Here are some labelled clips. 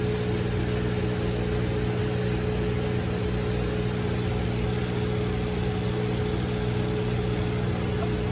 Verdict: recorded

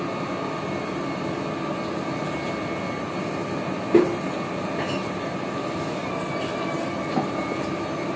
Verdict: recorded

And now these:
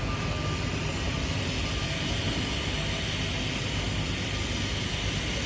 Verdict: recorded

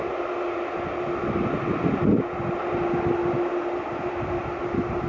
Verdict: recorded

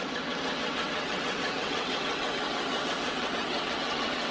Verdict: remade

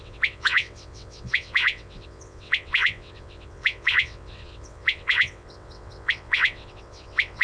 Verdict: remade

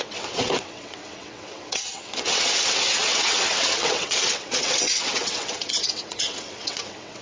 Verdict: remade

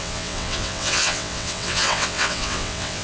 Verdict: remade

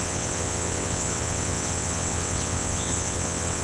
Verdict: remade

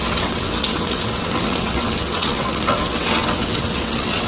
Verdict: remade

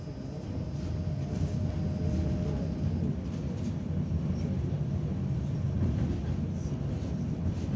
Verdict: recorded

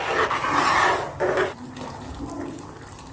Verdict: recorded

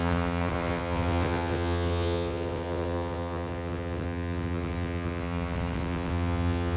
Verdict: remade